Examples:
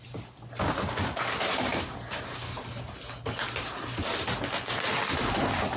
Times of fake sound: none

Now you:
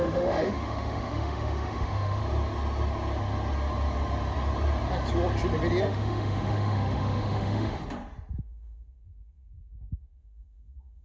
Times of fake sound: 0.0-2.2 (autoencoder, DAC-VAE); 5.8-7.8; 8.4-11.0

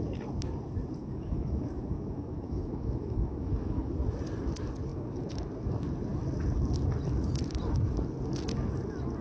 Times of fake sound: 1.0-3.9 (autoencoder, DAC-VAE); 4.9-5.5